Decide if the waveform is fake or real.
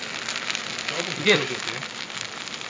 real